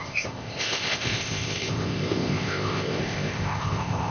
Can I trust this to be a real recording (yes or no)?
no